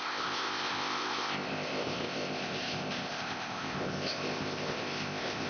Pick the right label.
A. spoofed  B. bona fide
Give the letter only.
A